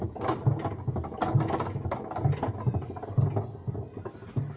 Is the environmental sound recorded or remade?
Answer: recorded